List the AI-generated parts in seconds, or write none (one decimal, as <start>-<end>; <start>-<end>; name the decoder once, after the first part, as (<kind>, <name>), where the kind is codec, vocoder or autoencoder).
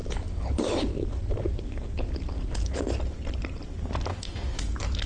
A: 4.1-4.6 (autoencoder, DAC-VAE)